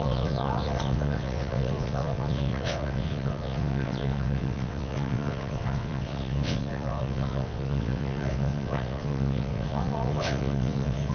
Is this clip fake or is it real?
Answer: fake